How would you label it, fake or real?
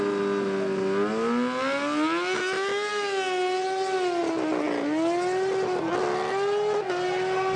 real